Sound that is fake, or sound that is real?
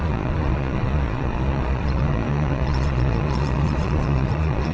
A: fake